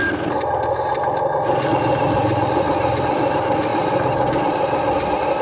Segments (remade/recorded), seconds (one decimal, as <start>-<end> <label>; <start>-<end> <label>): 0.0-5.4 recorded